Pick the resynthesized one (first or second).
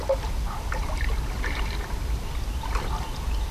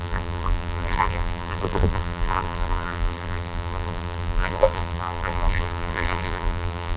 second